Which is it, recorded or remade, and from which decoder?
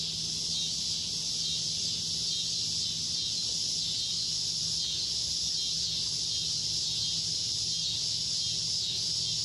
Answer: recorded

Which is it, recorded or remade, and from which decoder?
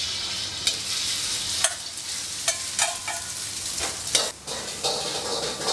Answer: recorded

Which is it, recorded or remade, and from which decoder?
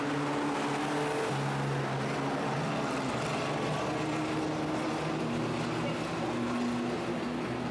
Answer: recorded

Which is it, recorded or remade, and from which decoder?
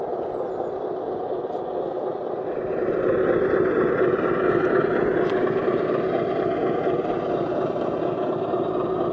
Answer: recorded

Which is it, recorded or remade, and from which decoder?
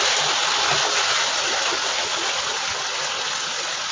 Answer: recorded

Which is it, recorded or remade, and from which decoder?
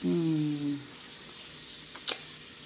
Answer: recorded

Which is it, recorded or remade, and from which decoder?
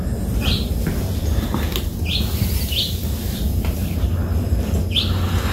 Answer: recorded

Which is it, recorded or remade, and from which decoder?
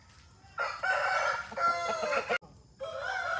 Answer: recorded